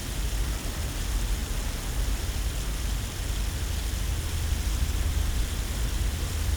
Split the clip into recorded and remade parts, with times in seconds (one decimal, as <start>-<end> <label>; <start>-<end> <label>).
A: 0.0-1.4 remade; 1.4-4.2 recorded; 4.2-6.6 remade